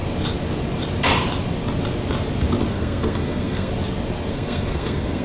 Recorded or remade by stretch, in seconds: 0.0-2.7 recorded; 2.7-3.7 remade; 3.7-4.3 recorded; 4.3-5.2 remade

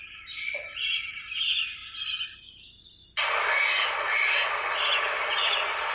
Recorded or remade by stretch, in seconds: 0.0-5.9 recorded

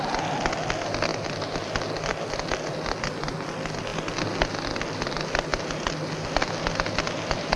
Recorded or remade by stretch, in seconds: 0.0-7.6 recorded